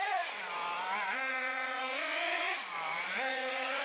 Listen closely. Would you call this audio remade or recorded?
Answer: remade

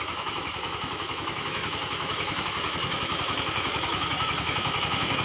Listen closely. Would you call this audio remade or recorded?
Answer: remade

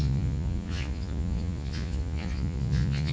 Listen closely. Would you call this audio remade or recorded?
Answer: remade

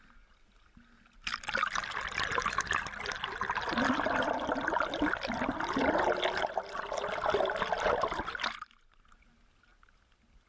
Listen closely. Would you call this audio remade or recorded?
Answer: recorded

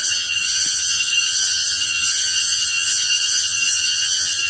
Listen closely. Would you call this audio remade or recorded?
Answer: remade